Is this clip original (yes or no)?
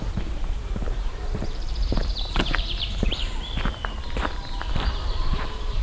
no